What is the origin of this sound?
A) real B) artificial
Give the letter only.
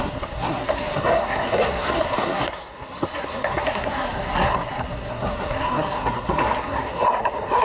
B